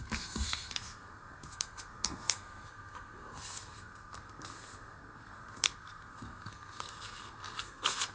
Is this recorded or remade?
remade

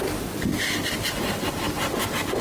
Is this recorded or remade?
recorded